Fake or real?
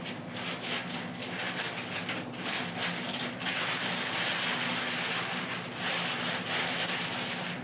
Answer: real